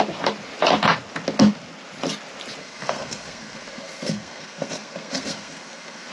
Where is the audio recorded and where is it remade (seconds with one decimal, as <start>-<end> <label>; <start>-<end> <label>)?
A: 0.0-2.6 recorded; 2.6-6.1 remade